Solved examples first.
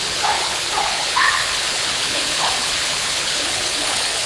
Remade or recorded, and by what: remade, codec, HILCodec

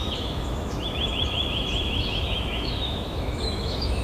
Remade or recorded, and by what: remade, autoencoder, DAC-VAE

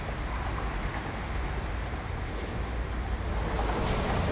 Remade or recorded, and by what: recorded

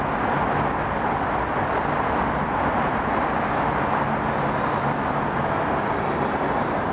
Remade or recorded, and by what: recorded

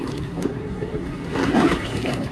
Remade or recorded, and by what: remade, codec, SNAC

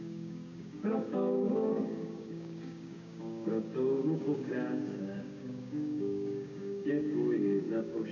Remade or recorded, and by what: remade, codec, DAC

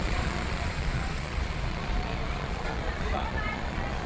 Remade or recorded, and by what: remade, vocoder, Vocos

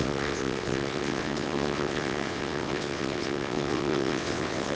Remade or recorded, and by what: remade, vocoder, WaveNeXt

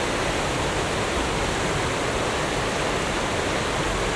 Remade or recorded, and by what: recorded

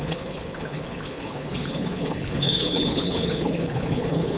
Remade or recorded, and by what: remade, codec, HILCodec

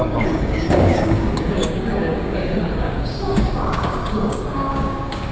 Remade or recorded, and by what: remade, codec, DAC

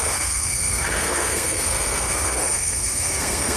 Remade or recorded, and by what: remade, codec, SNAC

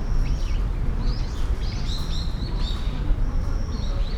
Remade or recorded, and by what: remade, vocoder, BigVGAN v2